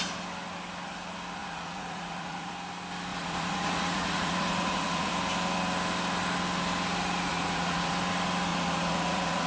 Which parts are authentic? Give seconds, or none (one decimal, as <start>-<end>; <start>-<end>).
0.0-1.4; 2.5-3.1; 5.1-7.3; 7.9-8.5